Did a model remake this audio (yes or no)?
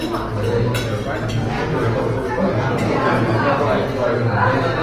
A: no